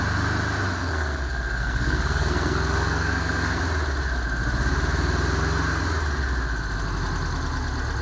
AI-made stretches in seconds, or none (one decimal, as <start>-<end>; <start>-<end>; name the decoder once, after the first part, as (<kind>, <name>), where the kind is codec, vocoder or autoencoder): 0.8-3.6 (codec, SNAC)